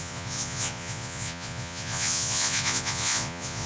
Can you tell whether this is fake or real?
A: fake